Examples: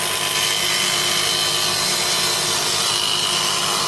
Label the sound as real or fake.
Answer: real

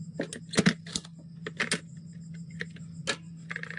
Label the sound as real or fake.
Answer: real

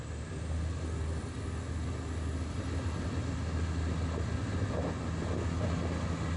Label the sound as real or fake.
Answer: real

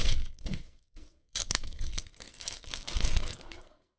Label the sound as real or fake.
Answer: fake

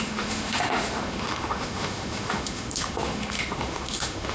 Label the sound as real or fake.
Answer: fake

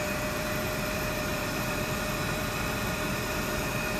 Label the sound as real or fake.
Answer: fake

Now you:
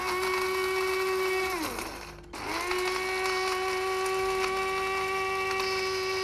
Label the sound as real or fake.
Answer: real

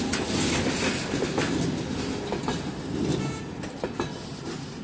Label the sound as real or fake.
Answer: real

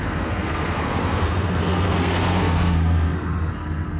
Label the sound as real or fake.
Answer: fake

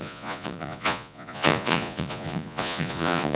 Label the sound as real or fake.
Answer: fake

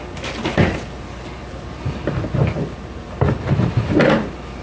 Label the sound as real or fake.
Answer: real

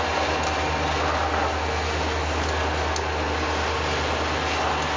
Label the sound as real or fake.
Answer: real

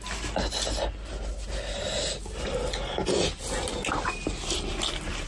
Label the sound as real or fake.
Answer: real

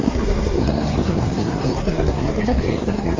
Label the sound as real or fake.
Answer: fake